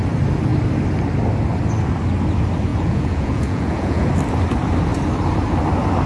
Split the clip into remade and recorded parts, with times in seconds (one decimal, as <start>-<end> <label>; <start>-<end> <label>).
0.0-2.7 recorded; 2.7-4.1 remade; 4.1-6.1 recorded